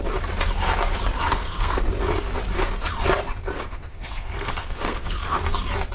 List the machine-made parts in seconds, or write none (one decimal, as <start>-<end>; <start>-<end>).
1.2-1.8; 3.5-5.4